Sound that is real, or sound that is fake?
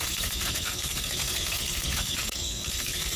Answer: fake